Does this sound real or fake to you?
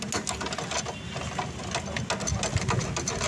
real